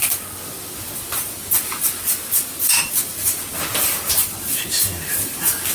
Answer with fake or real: real